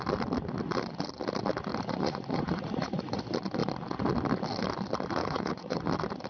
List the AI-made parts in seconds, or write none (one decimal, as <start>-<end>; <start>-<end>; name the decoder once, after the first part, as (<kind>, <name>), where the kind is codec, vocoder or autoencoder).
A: 1.7-3.2 (vocoder, Vocos); 5.2-5.8